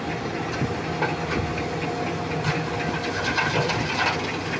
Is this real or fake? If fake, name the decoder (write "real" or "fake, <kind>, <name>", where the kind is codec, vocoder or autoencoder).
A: real